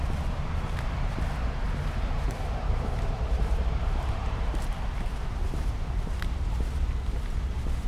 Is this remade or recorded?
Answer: remade